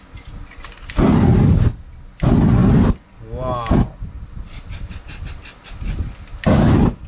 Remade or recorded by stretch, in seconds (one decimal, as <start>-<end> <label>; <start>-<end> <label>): 0.0-7.1 recorded